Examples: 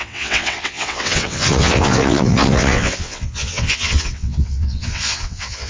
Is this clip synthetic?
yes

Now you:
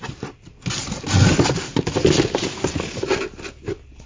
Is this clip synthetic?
no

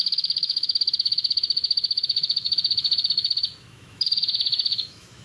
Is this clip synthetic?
yes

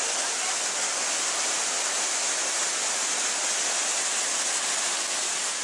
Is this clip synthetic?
yes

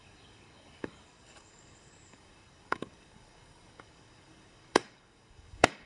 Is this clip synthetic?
yes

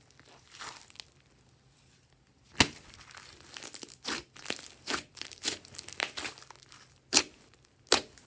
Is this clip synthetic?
no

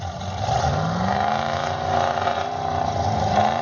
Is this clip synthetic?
no